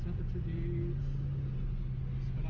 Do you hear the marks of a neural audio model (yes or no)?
no